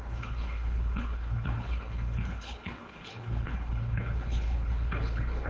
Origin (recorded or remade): remade